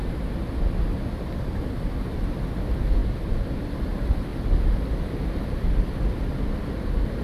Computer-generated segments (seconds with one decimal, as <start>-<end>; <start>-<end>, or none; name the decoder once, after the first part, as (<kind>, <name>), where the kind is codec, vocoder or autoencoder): none